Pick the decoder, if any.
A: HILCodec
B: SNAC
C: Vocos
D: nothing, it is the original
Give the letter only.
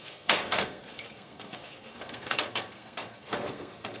B